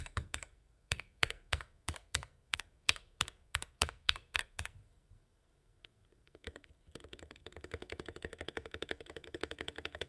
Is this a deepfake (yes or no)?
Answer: yes